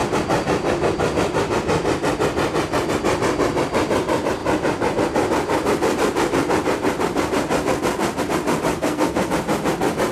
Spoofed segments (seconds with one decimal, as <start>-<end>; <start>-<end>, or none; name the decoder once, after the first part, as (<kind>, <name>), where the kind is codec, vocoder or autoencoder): 8.7-9.3 (codec, SNAC)